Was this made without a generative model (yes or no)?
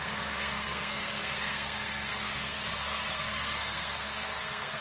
no